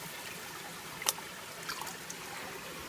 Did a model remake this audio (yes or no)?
no